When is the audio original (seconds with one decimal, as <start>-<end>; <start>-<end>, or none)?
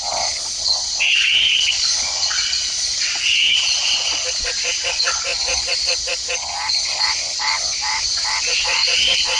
none